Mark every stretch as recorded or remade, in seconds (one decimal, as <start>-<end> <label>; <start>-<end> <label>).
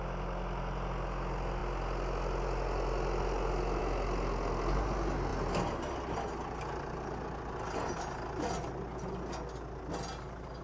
0.0-10.6 recorded